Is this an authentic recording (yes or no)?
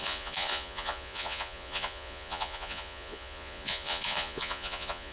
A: no